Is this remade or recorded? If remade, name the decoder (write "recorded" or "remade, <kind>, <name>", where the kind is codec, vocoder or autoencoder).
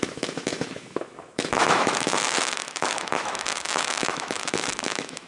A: remade, autoencoder, DAC-VAE